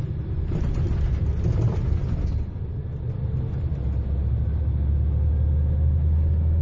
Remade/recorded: recorded